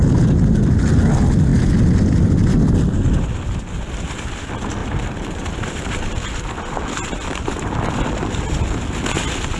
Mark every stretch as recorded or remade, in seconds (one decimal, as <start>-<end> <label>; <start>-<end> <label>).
0.0-4.8 recorded; 4.8-6.4 remade; 6.4-9.6 recorded